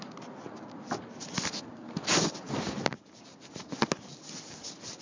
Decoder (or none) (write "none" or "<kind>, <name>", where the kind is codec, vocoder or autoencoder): none